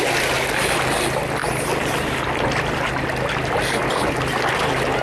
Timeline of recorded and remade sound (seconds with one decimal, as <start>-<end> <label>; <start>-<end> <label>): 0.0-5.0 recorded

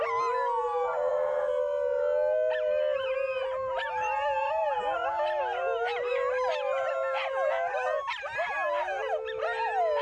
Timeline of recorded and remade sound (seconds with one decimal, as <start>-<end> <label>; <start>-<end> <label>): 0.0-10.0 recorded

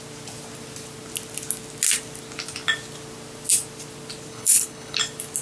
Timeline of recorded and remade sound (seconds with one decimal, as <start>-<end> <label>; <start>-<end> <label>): 0.0-4.3 recorded; 4.3-5.0 remade; 5.0-5.4 recorded

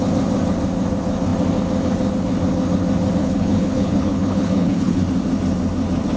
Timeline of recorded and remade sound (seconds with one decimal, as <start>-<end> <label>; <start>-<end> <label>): 0.0-3.2 recorded; 3.2-5.0 remade; 5.0-6.2 recorded